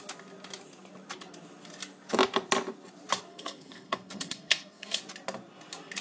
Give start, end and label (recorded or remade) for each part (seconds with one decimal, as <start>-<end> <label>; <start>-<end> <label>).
0.0-3.3 recorded; 3.3-5.0 remade; 5.0-6.0 recorded